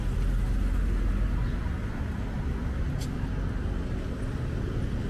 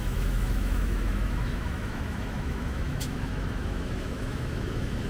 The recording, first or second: first